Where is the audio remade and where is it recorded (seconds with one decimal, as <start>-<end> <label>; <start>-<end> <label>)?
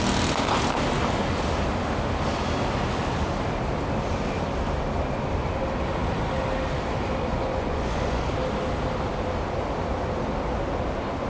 0.0-7.3 recorded; 7.3-8.2 remade; 8.2-11.3 recorded